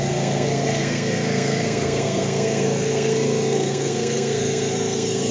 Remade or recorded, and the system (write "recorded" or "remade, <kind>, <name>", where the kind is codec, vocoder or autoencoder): remade, codec, SNAC